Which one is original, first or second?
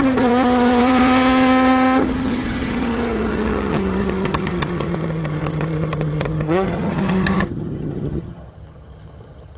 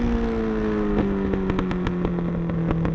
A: second